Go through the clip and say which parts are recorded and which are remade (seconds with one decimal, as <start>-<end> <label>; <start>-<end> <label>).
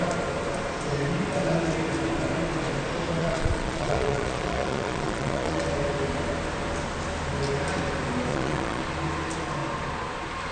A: 0.0-3.2 recorded; 3.2-5.6 remade; 5.6-8.3 recorded; 8.3-8.8 remade; 8.8-10.5 recorded